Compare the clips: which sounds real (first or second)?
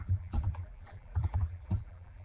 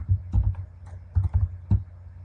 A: second